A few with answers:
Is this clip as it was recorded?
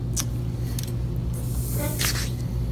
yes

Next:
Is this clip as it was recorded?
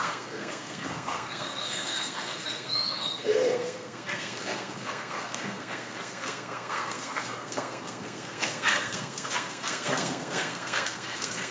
no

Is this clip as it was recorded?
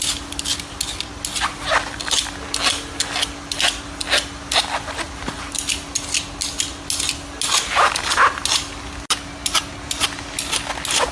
yes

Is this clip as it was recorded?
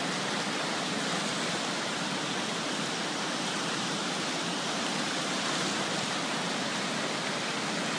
yes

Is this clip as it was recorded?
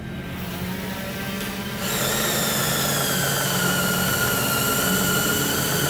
yes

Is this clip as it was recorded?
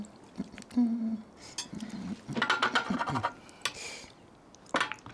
yes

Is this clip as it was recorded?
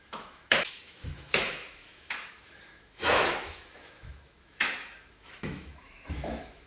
no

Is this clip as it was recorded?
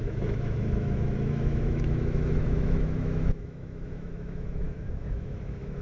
no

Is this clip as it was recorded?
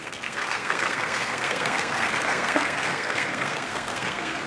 no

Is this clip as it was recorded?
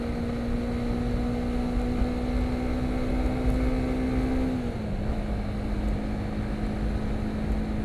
yes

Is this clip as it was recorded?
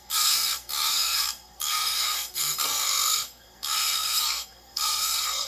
no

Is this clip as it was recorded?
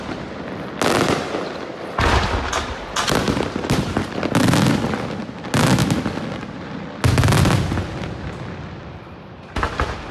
yes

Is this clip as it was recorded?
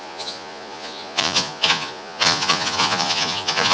no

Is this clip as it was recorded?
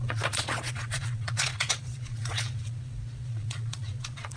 no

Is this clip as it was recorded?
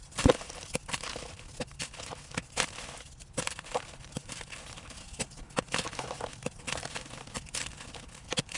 yes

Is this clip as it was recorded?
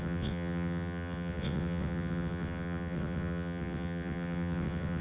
no